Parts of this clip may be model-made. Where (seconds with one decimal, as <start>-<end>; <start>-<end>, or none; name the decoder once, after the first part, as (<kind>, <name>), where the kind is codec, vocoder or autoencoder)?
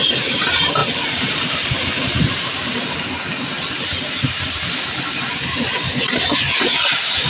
none